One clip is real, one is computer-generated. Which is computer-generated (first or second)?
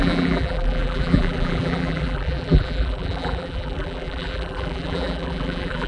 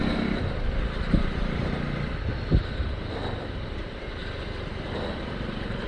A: first